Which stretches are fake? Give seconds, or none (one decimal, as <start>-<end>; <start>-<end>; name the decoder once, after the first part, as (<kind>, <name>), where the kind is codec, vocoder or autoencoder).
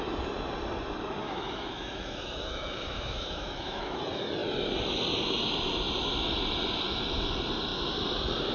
1.2-4.0 (autoencoder, DAC-VAE)